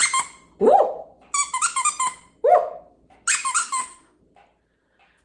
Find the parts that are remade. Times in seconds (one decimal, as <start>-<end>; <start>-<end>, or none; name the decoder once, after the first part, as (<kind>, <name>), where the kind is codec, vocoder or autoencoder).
3.6-4.2 (autoencoder, DAC-VAE)